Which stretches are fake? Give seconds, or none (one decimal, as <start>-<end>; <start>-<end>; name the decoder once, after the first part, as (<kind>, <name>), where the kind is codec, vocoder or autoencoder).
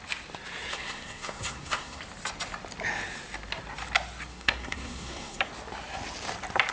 0.7-2.0 (codec, SNAC); 4.3-5.4